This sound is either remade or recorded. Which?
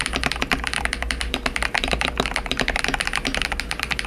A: recorded